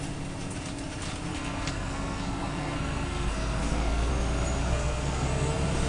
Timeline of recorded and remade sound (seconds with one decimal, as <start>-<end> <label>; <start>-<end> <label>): 0.0-1.3 recorded; 1.3-4.1 remade; 4.1-4.6 recorded; 4.6-5.5 remade; 5.5-5.9 recorded

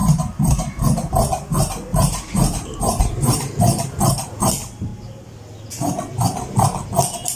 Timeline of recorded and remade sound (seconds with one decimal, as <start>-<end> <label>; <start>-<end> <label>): 0.0-1.1 remade; 1.1-1.9 recorded; 1.9-3.4 remade; 3.4-7.4 recorded

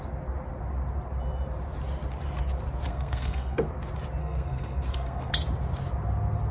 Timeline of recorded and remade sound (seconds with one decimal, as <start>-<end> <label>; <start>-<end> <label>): 0.0-2.9 recorded; 2.9-3.7 remade; 3.7-4.2 recorded; 4.2-5.3 remade; 5.3-6.5 recorded